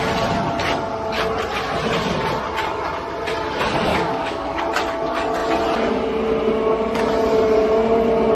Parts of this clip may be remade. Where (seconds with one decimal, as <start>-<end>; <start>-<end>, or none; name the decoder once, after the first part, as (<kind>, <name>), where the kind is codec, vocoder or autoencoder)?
3.9-4.6 (codec, DAC)